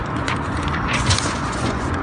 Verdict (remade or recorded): remade